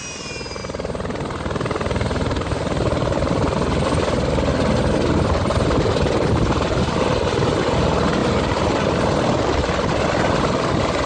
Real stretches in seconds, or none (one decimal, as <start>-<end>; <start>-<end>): 0.0-11.1